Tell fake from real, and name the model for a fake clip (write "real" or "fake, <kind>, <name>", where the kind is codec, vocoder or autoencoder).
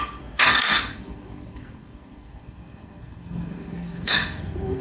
fake, codec, SNAC